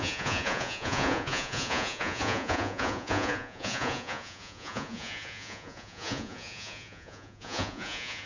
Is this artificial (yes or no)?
yes